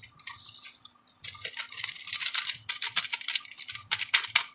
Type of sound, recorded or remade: remade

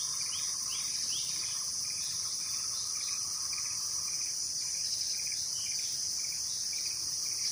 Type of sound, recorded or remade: recorded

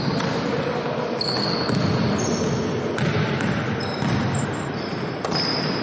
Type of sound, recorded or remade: recorded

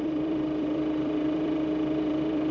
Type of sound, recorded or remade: remade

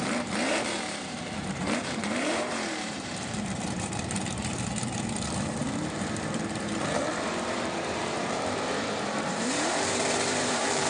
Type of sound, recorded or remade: remade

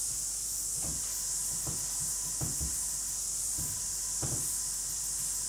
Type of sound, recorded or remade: recorded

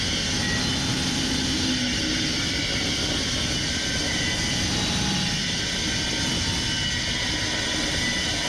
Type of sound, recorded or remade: recorded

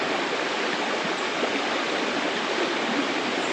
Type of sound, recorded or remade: remade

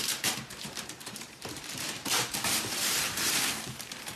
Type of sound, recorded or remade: remade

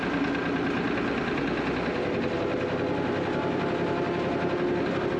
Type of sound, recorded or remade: recorded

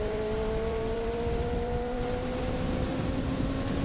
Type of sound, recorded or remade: remade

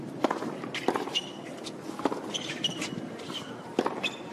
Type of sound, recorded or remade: recorded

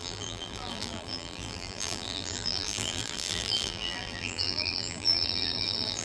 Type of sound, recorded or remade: remade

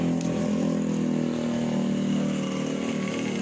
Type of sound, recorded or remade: recorded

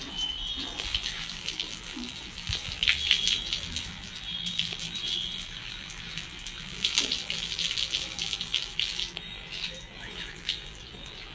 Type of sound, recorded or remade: remade